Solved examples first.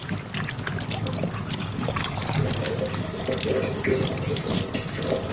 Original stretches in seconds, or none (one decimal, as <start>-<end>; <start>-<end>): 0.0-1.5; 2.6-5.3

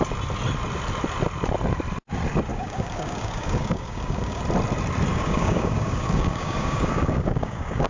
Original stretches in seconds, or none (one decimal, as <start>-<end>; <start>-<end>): 0.0-2.5; 4.4-5.1

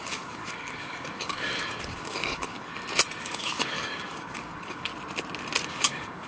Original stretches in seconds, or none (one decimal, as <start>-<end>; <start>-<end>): 2.7-3.2; 4.9-5.7